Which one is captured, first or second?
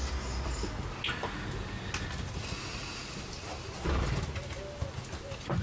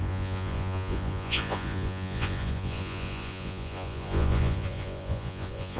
first